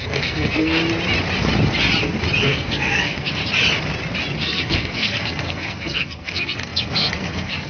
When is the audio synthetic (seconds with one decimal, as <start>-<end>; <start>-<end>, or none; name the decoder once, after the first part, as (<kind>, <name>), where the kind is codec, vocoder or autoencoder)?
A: 0.0-0.8 (codec, SNAC); 2.4-3.4; 4.4-7.7